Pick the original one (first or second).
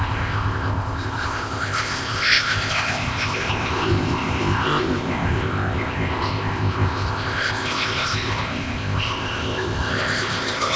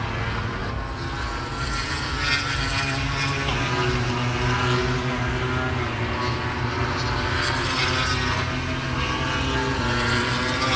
second